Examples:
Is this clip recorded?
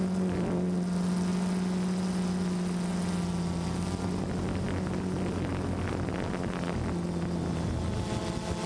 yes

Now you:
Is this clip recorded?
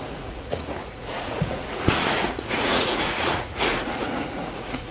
no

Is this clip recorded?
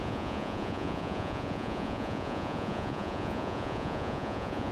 no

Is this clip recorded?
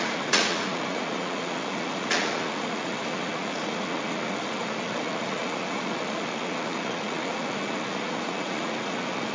no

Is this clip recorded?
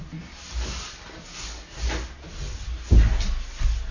yes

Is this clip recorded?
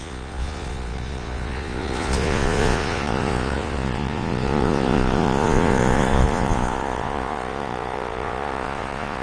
no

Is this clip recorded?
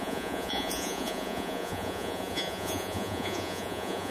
no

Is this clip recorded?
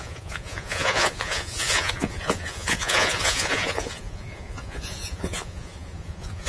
no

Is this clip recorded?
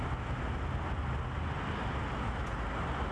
yes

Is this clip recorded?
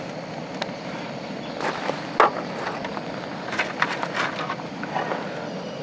yes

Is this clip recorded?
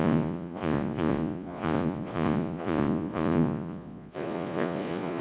no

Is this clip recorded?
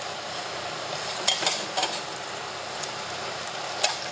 yes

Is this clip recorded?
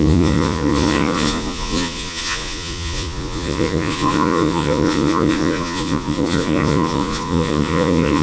no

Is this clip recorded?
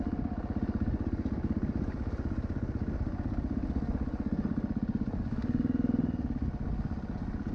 yes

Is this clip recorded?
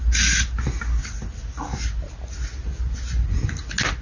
yes